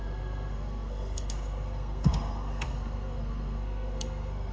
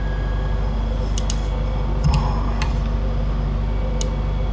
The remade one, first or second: first